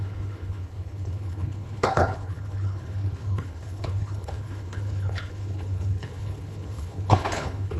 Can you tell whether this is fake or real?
fake